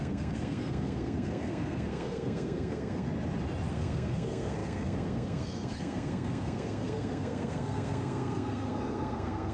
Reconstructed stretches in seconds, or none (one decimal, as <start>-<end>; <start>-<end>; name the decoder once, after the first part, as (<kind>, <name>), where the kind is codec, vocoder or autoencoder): 0.0-3.1 (codec, SNAC); 3.7-9.5